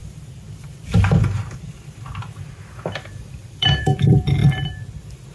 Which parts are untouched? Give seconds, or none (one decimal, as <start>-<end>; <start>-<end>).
0.0-3.2; 4.4-5.3